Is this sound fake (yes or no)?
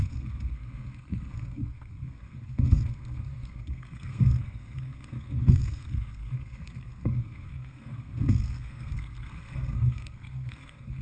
yes